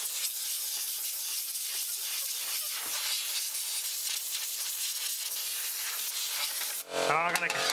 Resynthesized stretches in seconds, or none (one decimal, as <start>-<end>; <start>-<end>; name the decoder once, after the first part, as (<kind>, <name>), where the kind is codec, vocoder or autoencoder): none